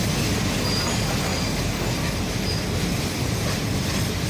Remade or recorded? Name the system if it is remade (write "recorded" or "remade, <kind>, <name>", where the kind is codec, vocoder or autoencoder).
recorded